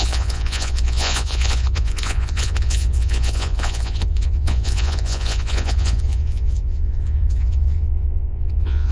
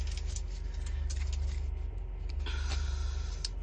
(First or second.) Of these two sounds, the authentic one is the second